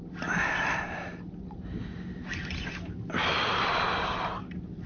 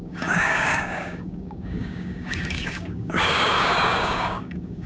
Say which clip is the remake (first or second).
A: second